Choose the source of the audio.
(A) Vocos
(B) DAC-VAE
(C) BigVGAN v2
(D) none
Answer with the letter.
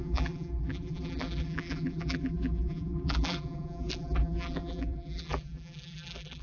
C